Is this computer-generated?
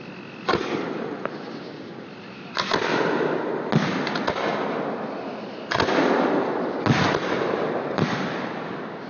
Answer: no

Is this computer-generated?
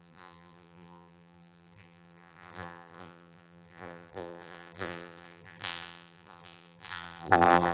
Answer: yes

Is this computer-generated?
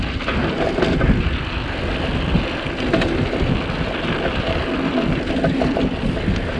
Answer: no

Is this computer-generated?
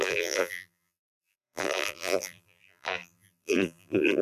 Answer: yes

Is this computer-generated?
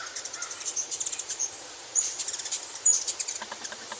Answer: yes